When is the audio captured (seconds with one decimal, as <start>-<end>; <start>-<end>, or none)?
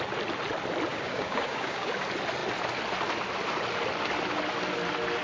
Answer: 0.0-0.9; 1.9-5.2